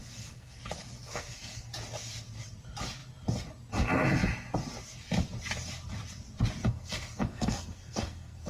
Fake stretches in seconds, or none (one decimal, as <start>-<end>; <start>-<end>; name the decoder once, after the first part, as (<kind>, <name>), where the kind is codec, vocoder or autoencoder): 0.0-0.6 (codec, SNAC); 1.1-1.7; 6.6-8.5